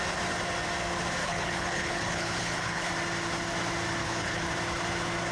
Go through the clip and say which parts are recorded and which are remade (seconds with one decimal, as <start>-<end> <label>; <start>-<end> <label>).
0.0-1.2 recorded; 1.2-2.9 remade; 2.9-4.0 recorded; 4.0-4.5 remade; 4.5-5.3 recorded